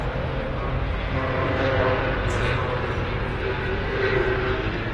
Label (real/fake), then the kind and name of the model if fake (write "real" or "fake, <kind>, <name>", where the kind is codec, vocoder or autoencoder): real